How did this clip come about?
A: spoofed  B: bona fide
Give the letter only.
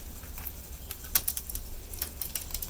B